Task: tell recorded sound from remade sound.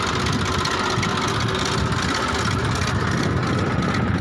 recorded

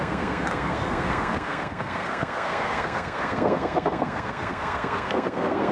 remade